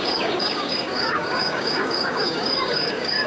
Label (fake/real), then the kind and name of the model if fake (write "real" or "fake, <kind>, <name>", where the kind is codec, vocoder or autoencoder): fake, codec, DAC